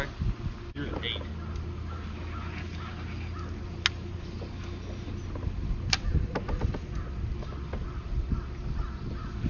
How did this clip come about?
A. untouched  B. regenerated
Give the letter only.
A